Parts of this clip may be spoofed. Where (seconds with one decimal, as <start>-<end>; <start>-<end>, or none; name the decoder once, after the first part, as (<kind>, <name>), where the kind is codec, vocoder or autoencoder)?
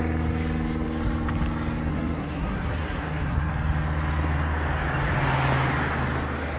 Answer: 1.9-3.5 (codec, SNAC)